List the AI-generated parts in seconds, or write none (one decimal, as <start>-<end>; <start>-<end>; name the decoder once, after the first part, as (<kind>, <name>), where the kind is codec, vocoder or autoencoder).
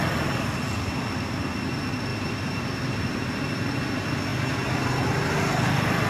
2.1-3.3 (vocoder, BigVGAN v2); 4.3-5.3